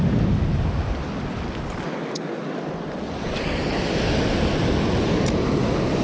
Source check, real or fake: real